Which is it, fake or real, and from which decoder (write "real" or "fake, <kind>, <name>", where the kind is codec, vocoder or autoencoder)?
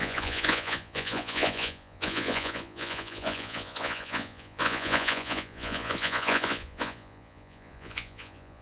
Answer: fake, vocoder, Vocos